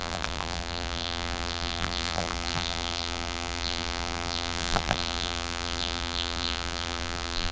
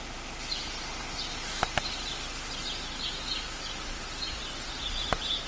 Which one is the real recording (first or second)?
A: second